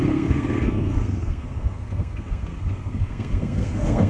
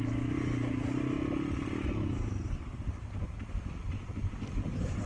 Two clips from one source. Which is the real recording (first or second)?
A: second